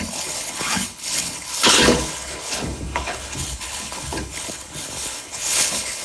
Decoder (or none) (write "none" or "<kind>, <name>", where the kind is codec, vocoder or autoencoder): codec, HILCodec